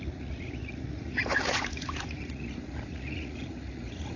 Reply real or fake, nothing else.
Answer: fake